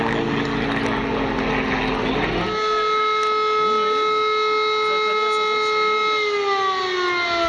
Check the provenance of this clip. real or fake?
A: real